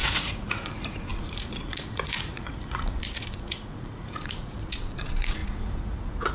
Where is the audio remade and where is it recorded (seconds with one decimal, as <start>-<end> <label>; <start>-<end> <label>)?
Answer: 0.0-6.3 remade